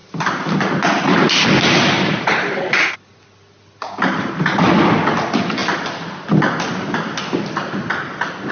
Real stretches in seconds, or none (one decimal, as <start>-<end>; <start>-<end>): 0.0-8.5